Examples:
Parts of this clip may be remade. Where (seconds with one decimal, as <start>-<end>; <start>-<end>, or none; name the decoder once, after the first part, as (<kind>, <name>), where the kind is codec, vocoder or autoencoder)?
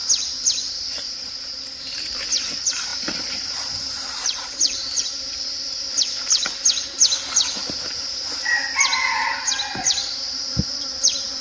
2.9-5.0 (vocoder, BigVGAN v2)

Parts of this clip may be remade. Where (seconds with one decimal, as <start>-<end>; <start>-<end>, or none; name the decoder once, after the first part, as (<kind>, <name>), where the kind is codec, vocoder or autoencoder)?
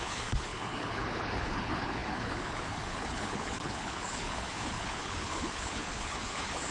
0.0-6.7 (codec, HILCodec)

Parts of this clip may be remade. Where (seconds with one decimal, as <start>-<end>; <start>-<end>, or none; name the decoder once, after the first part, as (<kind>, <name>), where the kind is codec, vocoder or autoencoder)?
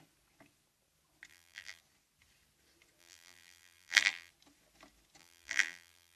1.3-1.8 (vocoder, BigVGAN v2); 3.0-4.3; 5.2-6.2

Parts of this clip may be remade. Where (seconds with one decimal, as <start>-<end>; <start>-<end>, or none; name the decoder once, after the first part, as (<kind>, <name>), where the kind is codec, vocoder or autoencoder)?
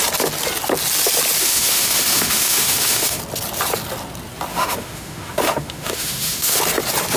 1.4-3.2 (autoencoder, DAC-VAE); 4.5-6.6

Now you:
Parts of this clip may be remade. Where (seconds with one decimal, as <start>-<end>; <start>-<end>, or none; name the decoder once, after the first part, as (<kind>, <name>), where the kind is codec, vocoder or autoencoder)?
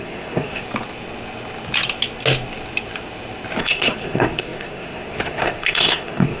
0.0-0.6 (codec, SNAC); 3.6-6.4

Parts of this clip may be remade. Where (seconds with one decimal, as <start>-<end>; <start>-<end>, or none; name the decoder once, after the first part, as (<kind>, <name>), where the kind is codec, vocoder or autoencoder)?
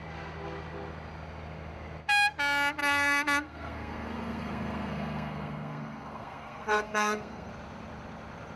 2.8-7.5 (codec, SNAC)